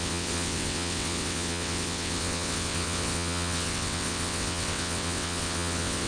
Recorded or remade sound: remade